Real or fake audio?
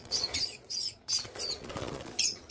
fake